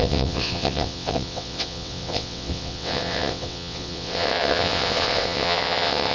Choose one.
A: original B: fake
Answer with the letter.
B